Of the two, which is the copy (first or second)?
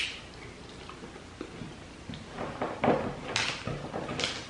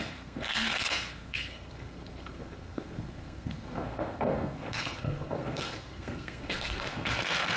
second